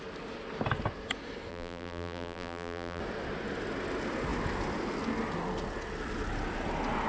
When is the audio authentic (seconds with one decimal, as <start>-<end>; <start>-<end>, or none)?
0.0-1.5; 3.0-7.1